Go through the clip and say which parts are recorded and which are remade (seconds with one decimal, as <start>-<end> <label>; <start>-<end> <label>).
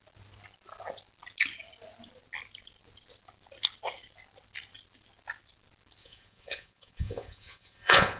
0.0-6.0 recorded; 6.0-8.2 remade